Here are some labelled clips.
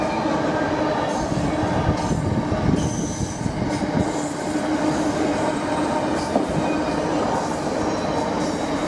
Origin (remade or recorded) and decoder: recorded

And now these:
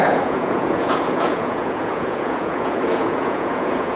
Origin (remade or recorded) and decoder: remade, vocoder, Vocos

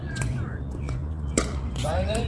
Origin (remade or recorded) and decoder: remade, vocoder, Vocos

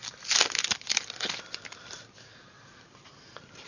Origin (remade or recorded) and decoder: recorded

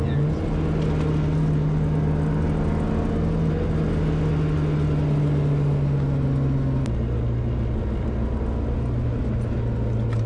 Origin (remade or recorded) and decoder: recorded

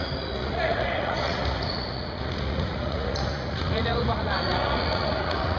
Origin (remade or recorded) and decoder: remade, vocoder, Vocos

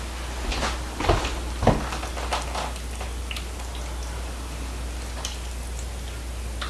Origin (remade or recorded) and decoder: recorded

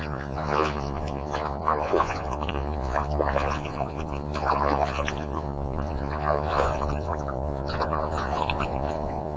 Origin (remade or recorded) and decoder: remade, vocoder, Vocos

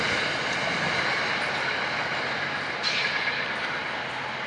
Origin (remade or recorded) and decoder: recorded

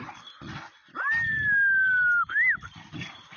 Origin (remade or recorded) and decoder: recorded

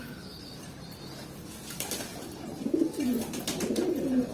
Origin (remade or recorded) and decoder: recorded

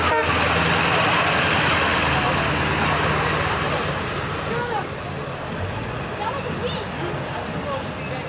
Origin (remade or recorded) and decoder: recorded